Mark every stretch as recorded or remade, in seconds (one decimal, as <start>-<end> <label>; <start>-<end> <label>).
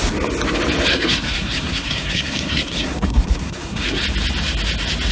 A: 0.0-0.9 recorded; 0.9-4.0 remade; 4.0-5.1 recorded